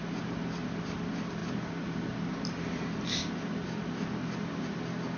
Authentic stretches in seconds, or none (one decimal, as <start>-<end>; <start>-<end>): 0.0-5.2

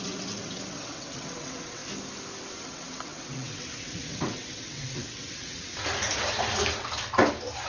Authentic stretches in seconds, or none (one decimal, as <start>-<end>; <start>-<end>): 1.8-2.5; 5.7-7.7

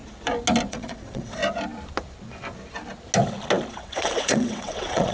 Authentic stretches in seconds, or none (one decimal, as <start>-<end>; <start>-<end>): 0.0-0.7; 1.4-3.7

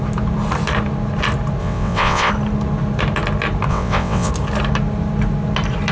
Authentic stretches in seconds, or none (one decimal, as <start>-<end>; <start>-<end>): 0.0-1.6; 2.3-3.7; 4.3-5.9

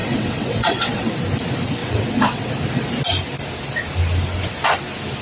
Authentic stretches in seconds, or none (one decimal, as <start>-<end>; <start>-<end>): 1.1-1.8; 2.5-5.2

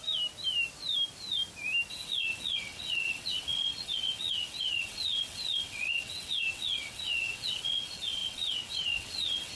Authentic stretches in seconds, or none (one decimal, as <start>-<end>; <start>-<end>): 0.0-1.9

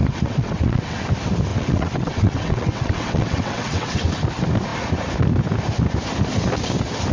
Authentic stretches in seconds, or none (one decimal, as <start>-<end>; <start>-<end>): 1.0-1.5; 4.1-7.1